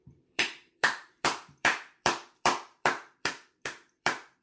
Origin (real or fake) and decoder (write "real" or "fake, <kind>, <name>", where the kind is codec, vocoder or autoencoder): fake, vocoder, BigVGAN v2